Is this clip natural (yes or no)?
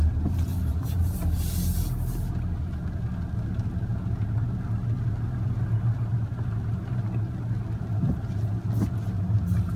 yes